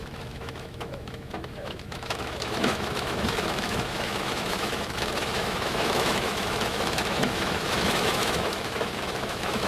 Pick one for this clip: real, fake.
fake